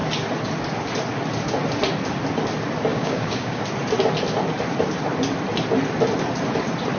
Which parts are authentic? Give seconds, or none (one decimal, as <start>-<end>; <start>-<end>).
0.0-2.9; 3.6-7.0